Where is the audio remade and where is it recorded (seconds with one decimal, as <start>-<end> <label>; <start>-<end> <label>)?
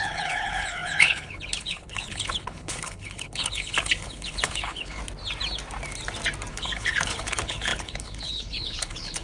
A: 0.0-5.0 remade; 5.0-6.5 recorded; 6.5-9.2 remade